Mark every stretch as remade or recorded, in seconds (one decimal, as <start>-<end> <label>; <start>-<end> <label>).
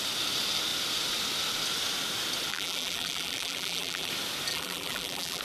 0.0-2.5 recorded; 2.5-4.1 remade; 4.1-4.5 recorded; 4.5-5.4 remade